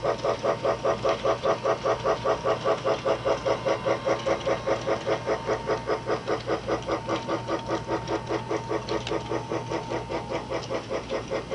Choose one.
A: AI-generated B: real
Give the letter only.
B